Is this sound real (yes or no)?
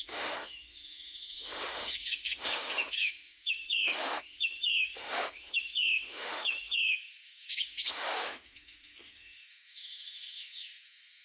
no